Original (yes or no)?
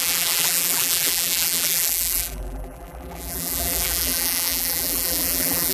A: no